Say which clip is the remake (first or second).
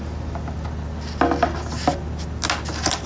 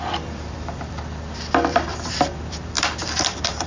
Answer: second